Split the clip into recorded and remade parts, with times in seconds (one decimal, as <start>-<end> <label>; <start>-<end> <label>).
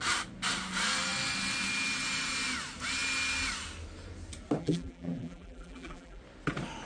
0.0-4.6 recorded; 4.6-6.2 remade; 6.2-6.9 recorded